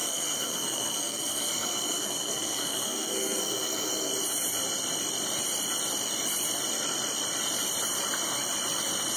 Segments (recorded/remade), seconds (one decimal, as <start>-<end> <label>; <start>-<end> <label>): 0.0-4.1 remade; 4.1-9.2 recorded